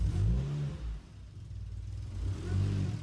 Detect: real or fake real